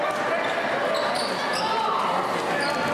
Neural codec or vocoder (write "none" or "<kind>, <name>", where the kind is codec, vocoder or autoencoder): none